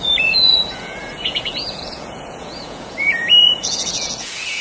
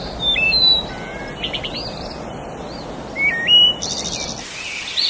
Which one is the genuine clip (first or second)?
second